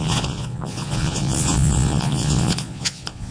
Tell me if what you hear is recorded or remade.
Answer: remade